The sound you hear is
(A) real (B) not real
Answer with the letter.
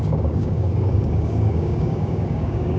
B